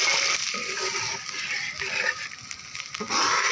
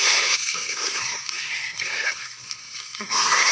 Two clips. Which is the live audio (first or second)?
first